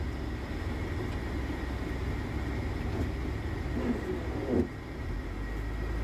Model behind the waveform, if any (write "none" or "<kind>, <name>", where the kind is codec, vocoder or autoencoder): none